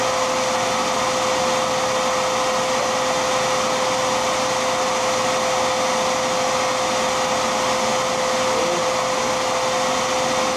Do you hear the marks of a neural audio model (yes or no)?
no